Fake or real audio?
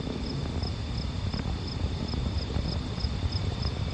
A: real